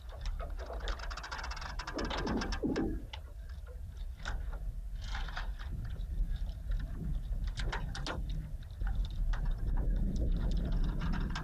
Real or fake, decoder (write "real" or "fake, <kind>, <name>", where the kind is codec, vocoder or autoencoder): real